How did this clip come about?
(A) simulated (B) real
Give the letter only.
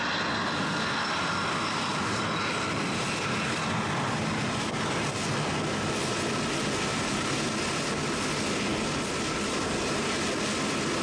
B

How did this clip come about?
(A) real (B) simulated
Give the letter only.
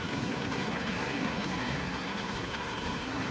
B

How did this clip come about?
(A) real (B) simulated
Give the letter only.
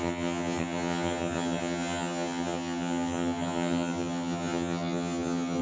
B